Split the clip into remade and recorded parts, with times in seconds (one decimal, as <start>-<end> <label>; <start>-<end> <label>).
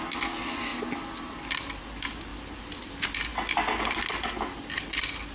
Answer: 0.0-0.7 recorded; 0.7-1.8 remade; 1.8-2.3 recorded; 2.3-2.9 remade; 2.9-5.3 recorded